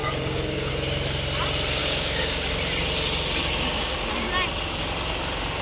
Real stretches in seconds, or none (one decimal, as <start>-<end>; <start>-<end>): 0.7-1.8; 2.5-3.4; 4.1-5.6